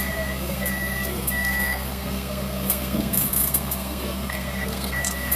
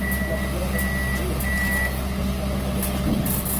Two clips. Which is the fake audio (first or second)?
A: first